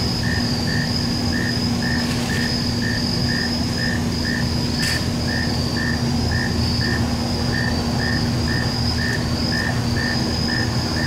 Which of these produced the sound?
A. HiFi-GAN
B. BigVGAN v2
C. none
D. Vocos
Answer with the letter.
C